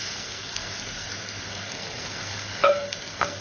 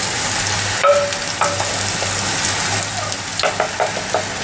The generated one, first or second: first